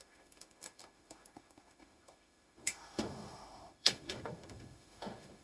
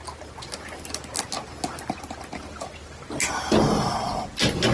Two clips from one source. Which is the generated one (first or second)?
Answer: first